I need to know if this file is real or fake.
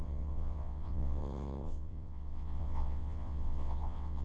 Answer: fake